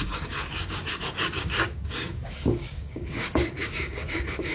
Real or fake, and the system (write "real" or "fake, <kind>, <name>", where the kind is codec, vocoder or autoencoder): fake, codec, DAC